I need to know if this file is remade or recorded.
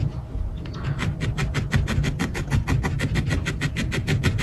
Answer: recorded